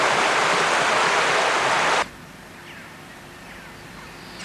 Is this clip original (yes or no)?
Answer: yes